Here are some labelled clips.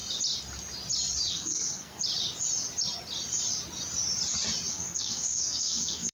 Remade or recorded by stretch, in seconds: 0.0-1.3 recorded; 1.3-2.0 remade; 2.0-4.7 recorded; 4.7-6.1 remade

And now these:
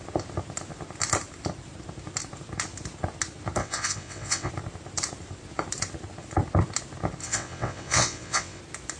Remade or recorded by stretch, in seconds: 0.0-3.6 recorded; 3.6-4.5 remade; 4.5-7.2 recorded; 7.2-8.6 remade; 8.6-9.0 recorded